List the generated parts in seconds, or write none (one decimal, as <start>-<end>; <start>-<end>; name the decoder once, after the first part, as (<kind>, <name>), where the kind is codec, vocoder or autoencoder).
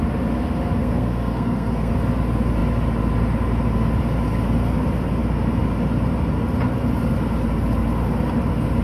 0.8-1.9 (codec, SNAC)